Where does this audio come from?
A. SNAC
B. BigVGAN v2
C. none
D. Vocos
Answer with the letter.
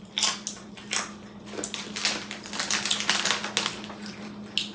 C